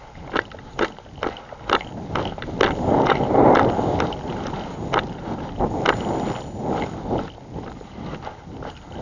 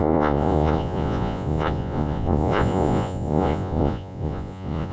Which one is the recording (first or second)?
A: first